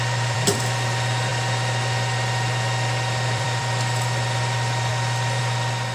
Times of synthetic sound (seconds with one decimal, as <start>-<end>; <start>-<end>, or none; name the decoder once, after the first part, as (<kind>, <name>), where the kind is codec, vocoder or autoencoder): 0.0-4.9 (vocoder, BigVGAN v2); 5.4-5.9